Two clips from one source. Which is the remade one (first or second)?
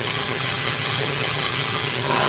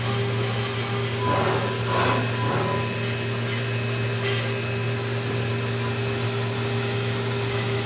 first